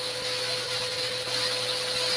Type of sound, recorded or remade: recorded